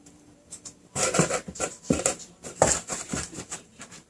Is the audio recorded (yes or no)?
no